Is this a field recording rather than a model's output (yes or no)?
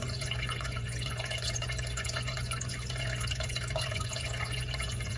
no